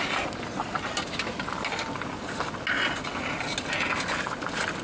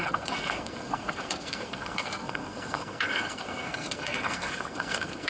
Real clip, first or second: first